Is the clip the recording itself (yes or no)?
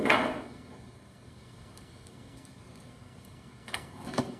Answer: no